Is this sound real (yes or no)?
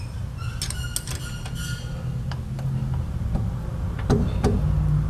yes